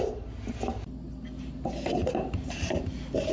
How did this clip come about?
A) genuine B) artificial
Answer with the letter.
A